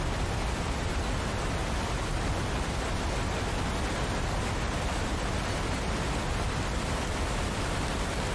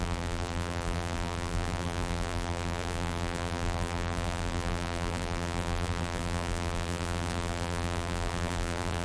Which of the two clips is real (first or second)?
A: first